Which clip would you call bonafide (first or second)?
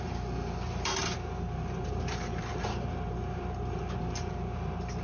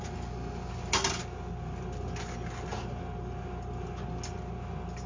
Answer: second